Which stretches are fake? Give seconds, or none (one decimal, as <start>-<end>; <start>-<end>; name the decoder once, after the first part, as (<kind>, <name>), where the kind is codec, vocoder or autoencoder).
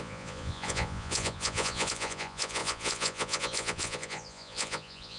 0.0-5.2 (vocoder, Vocos)